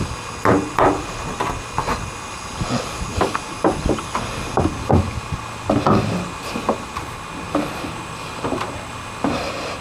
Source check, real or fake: real